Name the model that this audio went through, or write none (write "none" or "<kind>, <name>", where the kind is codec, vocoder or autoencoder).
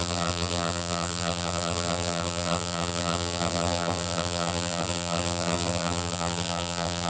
vocoder, BigVGAN v2